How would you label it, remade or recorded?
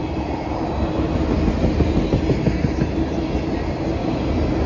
recorded